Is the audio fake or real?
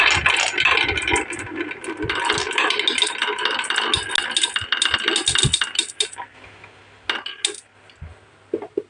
real